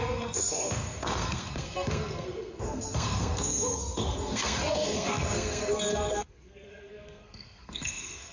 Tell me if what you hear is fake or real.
fake